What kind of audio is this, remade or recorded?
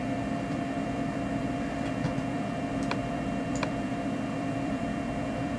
remade